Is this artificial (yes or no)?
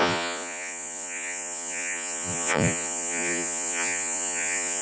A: yes